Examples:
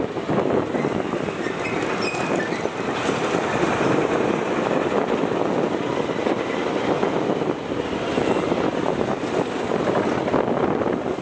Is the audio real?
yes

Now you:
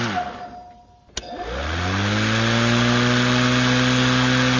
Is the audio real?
yes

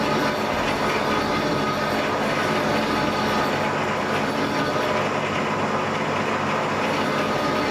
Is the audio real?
yes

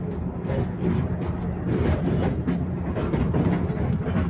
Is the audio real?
yes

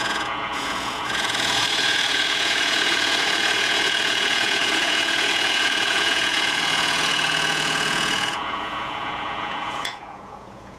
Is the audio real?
no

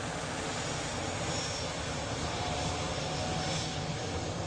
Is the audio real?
yes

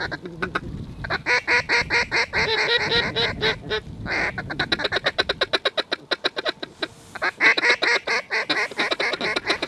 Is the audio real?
yes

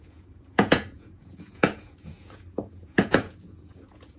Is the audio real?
no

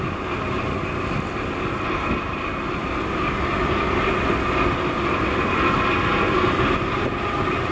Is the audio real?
yes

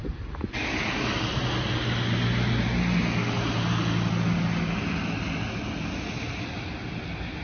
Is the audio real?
yes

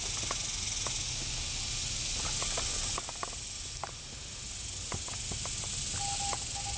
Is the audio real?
yes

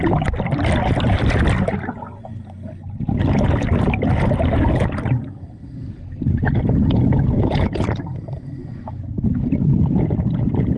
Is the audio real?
yes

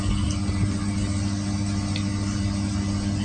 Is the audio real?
yes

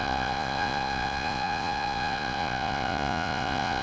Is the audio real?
no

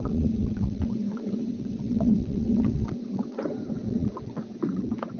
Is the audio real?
no